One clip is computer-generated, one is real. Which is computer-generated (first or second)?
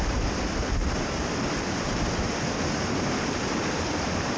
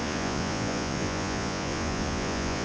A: second